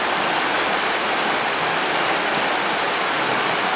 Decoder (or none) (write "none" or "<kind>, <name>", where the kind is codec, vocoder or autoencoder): none